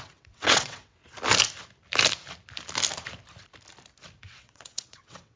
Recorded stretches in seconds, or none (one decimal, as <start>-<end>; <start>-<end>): 1.0-4.2